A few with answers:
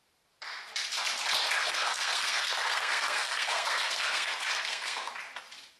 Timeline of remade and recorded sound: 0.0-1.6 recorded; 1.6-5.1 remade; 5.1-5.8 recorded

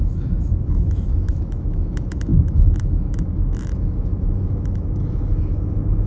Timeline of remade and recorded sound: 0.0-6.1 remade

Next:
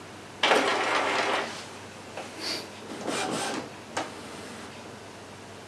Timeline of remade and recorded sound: 0.0-5.7 recorded

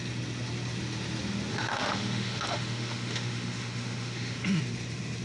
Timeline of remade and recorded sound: 0.0-1.5 recorded; 1.5-4.6 remade; 4.6-5.2 recorded